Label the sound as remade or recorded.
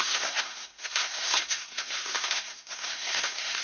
remade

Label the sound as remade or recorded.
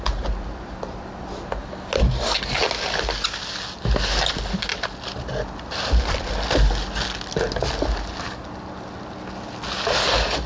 recorded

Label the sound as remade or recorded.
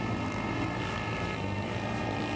recorded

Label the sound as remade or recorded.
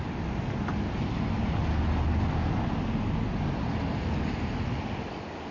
recorded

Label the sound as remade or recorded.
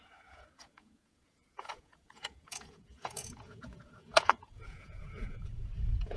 remade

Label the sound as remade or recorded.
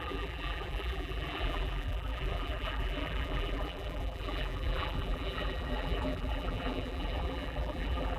remade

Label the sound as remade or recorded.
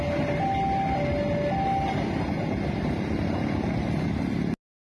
recorded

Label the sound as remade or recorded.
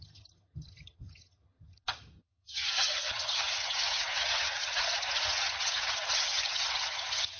remade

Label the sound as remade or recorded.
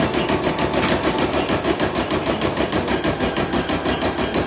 recorded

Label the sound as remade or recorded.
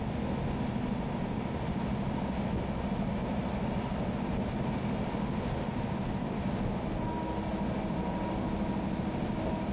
recorded